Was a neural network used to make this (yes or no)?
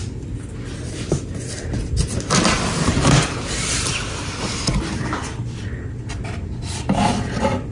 no